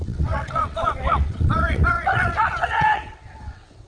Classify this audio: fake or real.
fake